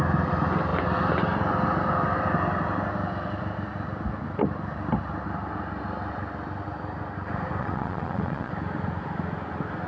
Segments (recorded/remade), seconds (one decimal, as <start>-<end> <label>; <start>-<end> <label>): 0.0-7.6 recorded; 7.6-8.5 remade; 8.5-9.9 recorded